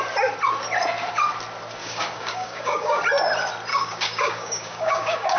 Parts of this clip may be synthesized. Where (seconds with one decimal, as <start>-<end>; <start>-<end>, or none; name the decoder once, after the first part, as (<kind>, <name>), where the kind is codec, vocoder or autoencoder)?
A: 1.8-3.0 (codec, DAC); 3.7-5.4